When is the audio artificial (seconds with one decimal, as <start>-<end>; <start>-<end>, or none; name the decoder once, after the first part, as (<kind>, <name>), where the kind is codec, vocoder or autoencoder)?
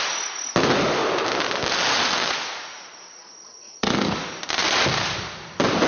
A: none